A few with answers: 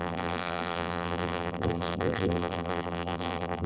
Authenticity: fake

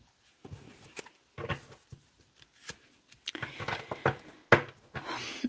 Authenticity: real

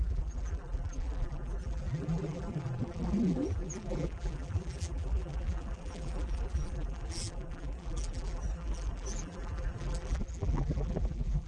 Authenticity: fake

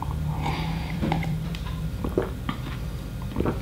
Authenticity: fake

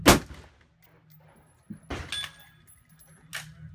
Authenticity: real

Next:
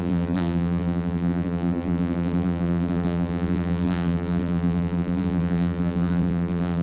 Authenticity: fake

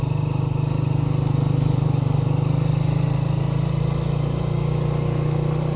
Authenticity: real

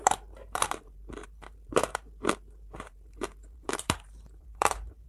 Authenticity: fake